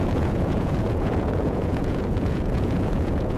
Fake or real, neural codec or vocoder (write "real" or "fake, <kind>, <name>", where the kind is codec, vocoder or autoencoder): fake, vocoder, Vocos